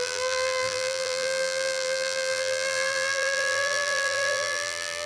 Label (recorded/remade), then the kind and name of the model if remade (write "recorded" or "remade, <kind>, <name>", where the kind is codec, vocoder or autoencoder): remade, vocoder, BigVGAN v2